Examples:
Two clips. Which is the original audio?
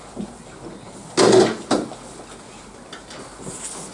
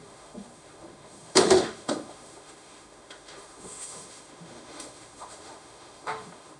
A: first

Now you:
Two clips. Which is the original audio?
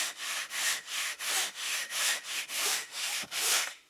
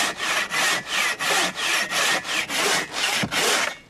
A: second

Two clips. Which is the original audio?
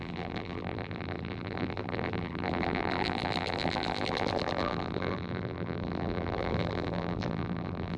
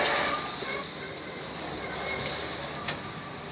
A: second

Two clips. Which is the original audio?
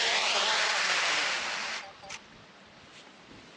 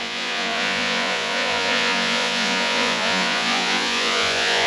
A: first